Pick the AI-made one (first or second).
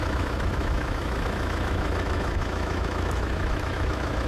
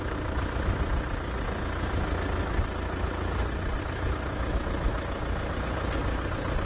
first